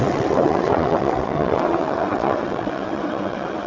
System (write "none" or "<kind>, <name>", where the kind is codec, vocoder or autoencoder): vocoder, WaveNeXt